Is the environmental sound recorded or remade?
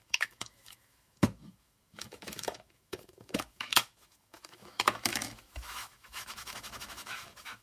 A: remade